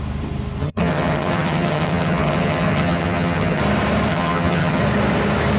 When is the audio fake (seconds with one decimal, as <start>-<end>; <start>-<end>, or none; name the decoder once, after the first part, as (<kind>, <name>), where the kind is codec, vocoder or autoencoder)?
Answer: 0.6-3.6 (vocoder, HiFi-GAN); 4.1-4.8